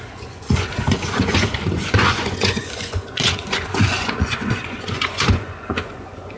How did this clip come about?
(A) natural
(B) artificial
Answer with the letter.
B